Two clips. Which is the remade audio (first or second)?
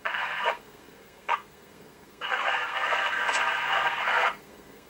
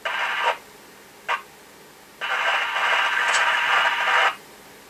first